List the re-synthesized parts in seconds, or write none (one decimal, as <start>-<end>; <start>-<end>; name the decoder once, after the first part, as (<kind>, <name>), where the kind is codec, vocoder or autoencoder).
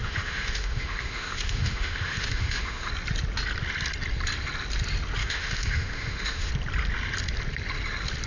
0.0-2.9 (autoencoder, DAC-VAE); 5.2-6.5